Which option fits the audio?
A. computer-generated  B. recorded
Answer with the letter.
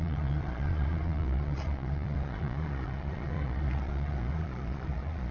A